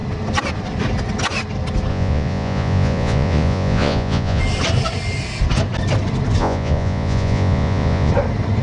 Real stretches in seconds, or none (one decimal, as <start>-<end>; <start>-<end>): 0.0-1.9; 4.4-6.4; 8.1-8.6